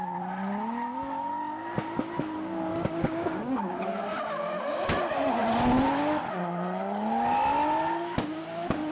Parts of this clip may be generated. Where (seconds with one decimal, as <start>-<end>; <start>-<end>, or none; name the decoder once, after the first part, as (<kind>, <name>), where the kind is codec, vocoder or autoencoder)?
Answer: 2.7-3.6 (codec, DAC)